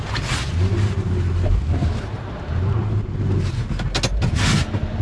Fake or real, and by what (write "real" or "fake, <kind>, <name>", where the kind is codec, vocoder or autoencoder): real